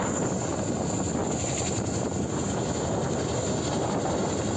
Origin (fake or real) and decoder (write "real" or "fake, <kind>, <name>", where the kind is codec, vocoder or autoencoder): real